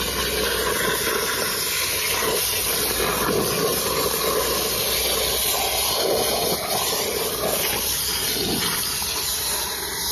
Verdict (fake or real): real